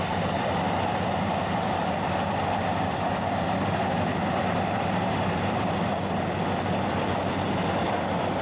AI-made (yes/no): yes